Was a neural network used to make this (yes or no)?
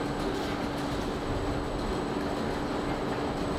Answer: no